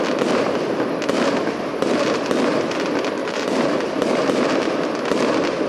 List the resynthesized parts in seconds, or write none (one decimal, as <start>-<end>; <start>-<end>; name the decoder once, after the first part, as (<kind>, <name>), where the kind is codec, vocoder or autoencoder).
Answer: 3.2-3.8 (vocoder, BigVGAN v2)